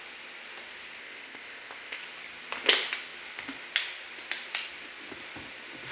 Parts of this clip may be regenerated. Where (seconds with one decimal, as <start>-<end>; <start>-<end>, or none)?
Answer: 1.0-2.0